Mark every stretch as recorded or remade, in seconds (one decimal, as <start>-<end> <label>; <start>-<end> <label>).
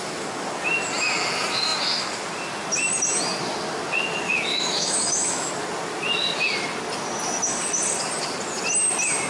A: 0.0-4.5 recorded; 4.5-5.5 remade; 5.5-9.3 recorded